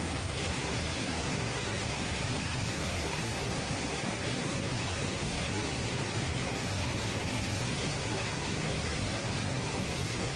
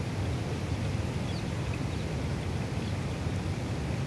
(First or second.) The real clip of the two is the second